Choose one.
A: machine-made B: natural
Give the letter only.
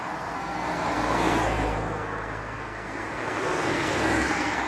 A